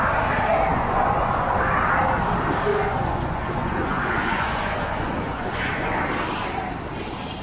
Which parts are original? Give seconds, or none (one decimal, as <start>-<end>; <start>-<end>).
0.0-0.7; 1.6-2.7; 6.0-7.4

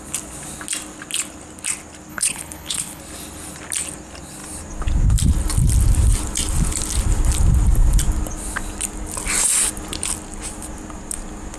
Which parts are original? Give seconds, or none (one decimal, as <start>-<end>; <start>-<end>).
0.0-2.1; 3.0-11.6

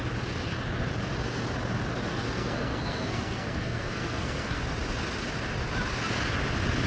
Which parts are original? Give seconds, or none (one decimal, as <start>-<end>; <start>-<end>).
0.0-2.1; 4.6-6.9

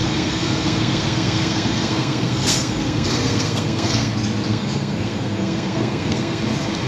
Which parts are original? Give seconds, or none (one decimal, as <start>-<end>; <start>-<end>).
4.1-4.5; 6.4-6.9